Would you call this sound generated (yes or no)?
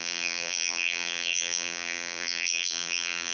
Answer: yes